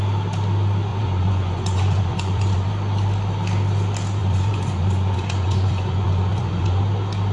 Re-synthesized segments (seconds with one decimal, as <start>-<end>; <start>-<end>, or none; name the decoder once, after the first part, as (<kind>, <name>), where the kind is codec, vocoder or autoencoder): 0.9-2.7 (vocoder, Vocos); 4.2-6.8